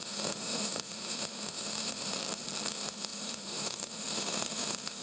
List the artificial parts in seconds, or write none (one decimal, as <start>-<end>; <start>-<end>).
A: 0.0-2.2; 2.7-5.0